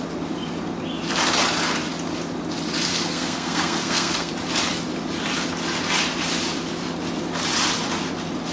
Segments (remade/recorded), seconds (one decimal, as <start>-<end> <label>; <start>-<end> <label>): 0.0-2.9 recorded; 2.9-4.3 remade; 4.3-8.5 recorded